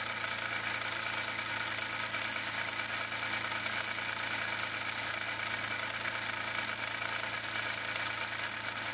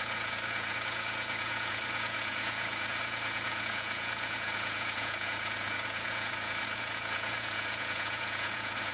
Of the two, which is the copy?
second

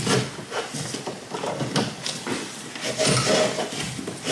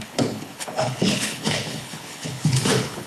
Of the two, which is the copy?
second